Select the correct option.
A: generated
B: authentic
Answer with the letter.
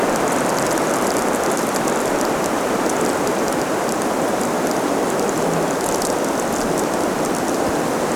A